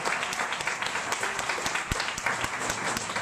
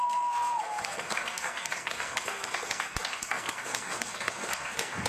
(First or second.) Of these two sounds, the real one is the first